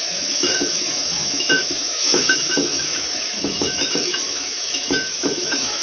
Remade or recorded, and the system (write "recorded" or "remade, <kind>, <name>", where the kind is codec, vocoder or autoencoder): remade, autoencoder, DAC-VAE